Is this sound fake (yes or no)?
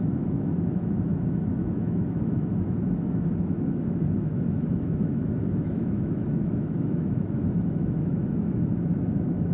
yes